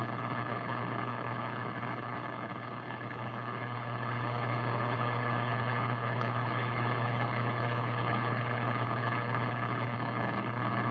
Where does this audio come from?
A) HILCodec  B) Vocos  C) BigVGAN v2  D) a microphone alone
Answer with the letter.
A